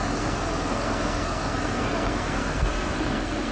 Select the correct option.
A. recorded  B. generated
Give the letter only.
B